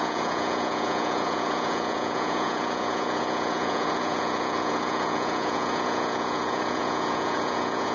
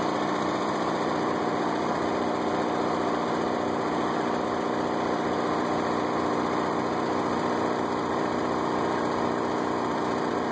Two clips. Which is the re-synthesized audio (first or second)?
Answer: first